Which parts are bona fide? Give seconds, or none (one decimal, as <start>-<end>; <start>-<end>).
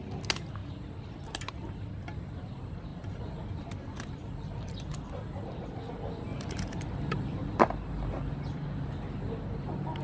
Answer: 0.0-2.9; 5.8-6.3; 7.6-10.0